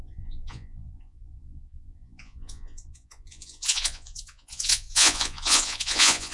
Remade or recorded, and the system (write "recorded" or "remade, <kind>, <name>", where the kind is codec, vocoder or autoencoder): remade, vocoder, Vocos